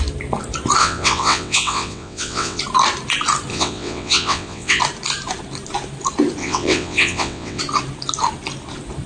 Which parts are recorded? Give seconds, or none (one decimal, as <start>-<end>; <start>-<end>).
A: 0.0-0.8; 2.6-3.5; 4.8-6.4; 7.6-9.1